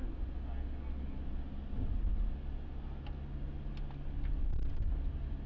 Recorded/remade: recorded